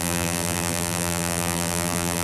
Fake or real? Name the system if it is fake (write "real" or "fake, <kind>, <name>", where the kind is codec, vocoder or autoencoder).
fake, vocoder, BigVGAN v2